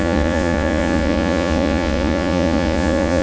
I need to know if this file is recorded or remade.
remade